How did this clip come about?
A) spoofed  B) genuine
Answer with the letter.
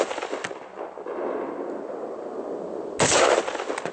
B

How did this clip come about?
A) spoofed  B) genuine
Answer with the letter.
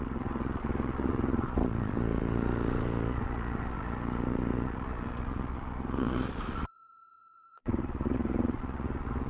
A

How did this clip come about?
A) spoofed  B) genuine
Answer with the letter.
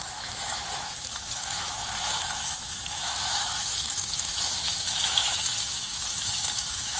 A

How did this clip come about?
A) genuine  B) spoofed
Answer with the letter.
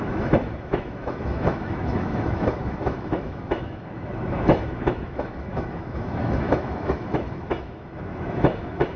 B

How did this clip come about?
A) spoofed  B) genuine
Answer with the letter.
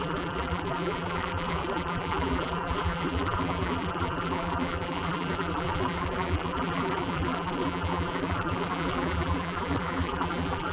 A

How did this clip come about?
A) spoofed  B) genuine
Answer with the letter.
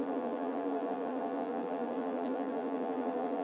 A